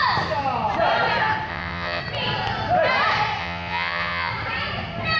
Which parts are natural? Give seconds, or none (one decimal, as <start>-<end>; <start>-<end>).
0.0-1.5; 2.0-3.4; 4.3-5.2